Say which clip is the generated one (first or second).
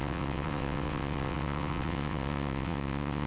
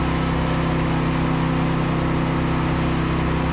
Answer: first